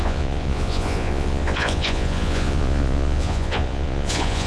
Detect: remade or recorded remade